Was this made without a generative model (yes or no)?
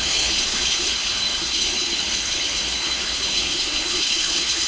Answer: no